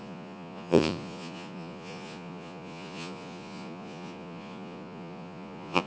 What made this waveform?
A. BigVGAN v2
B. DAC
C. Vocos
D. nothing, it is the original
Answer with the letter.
C